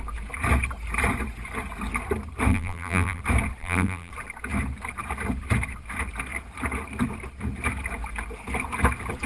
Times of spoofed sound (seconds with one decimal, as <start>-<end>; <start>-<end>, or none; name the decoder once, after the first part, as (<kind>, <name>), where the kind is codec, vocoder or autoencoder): 2.5-3.2 (vocoder, BigVGAN v2); 3.6-4.1